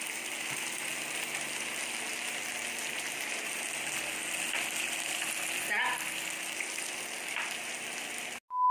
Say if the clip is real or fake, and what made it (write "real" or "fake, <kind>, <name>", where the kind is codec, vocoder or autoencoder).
real